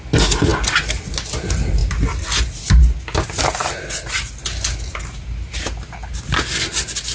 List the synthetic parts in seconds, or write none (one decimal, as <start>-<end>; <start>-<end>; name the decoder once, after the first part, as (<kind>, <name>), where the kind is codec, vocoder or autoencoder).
none